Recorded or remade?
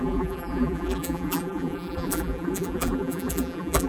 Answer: remade